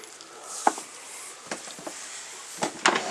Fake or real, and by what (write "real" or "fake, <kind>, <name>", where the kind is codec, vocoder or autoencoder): real